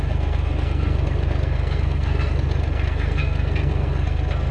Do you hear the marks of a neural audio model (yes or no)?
yes